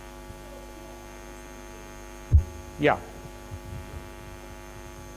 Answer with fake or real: real